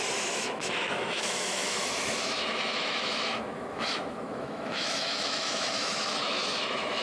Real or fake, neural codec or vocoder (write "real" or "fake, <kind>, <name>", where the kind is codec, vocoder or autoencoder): fake, autoencoder, DAC-VAE